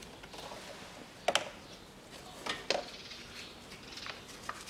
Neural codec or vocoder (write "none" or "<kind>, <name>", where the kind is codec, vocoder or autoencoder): none